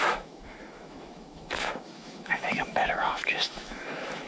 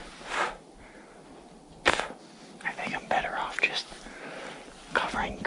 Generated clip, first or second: first